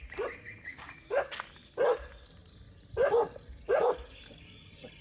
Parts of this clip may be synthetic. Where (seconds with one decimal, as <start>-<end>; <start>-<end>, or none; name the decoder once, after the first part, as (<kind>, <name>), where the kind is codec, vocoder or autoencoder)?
0.7-1.3 (codec, DAC)